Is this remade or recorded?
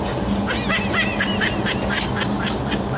recorded